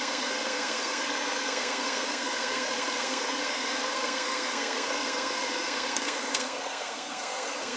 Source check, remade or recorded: remade